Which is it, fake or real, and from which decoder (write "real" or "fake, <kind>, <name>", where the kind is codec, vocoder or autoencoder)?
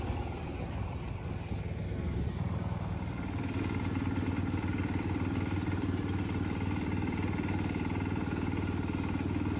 real